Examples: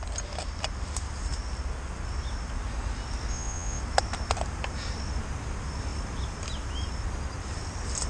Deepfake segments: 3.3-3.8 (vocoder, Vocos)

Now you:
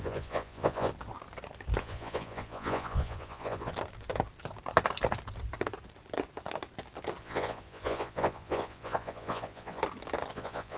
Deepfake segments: 0.0-0.9 (vocoder, Vocos); 1.8-3.7; 7.2-9.8; 10.3-10.8

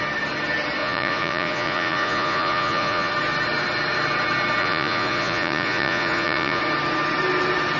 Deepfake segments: 0.8-3.1 (vocoder, Vocos); 4.6-6.6

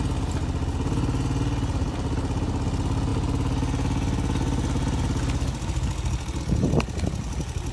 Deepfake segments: none

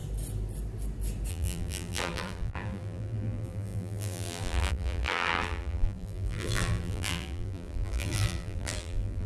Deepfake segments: 1.3-9.3 (vocoder, BigVGAN v2)

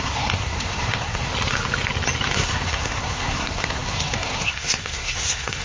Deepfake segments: 0.0-1.3 (codec, SNAC); 2.3-5.6

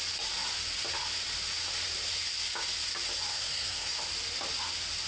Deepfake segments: 3.3-4.0 (codec, SNAC)